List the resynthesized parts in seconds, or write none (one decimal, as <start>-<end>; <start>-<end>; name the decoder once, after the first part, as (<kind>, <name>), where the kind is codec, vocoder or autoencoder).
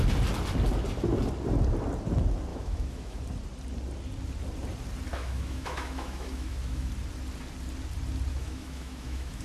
2.5-3.2 (autoencoder, DAC-VAE); 5.1-6.9; 8.3-9.4